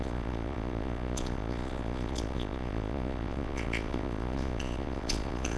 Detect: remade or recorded remade